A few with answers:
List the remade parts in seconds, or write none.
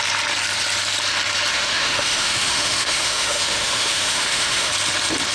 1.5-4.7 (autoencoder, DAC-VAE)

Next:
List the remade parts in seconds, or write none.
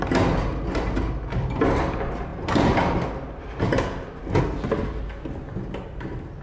none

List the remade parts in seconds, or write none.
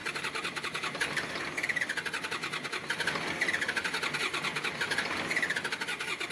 0.0-1.4 (vocoder, BigVGAN v2)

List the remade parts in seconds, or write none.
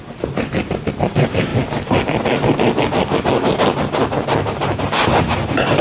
0.0-1.5 (vocoder, BigVGAN v2); 4.8-5.8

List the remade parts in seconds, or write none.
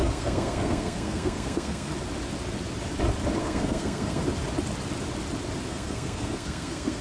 0.0-1.9 (codec, SNAC); 3.4-4.2; 5.7-7.0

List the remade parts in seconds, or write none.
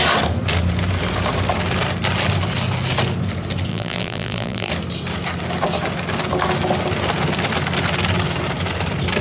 3.7-4.7 (vocoder, BigVGAN v2)